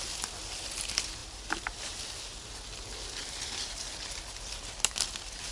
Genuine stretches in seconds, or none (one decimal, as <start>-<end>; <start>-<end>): 0.0-1.2; 1.9-3.2; 4.1-5.5